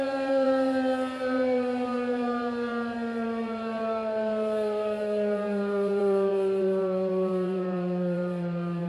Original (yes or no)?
no